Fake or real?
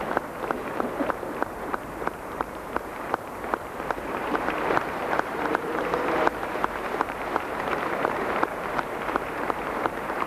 fake